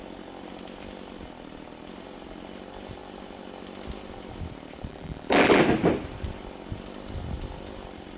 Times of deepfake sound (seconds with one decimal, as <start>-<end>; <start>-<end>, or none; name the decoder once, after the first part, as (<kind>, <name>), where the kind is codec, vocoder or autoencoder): 4.9-5.6 (vocoder, BigVGAN v2)